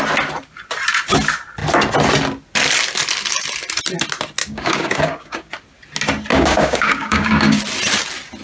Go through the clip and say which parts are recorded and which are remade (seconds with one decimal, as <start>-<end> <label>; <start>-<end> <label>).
0.0-4.4 recorded; 4.4-5.5 remade; 5.5-6.3 recorded; 6.3-7.6 remade; 7.6-8.4 recorded